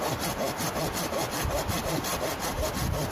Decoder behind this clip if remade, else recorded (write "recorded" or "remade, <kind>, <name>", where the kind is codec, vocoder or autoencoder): remade, vocoder, BigVGAN v2